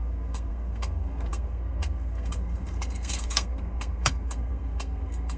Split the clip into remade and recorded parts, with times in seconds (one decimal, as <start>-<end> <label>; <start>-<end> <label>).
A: 0.0-5.4 remade